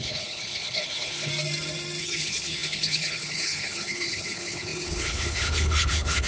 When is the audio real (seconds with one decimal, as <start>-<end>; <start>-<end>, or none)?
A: 1.3-2.0